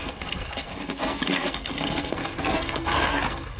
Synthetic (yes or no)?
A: yes